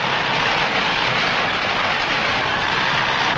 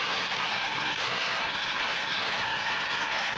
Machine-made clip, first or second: second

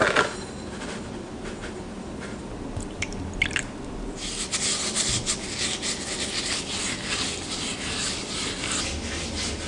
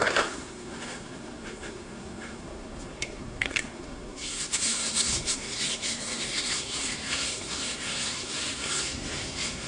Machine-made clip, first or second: second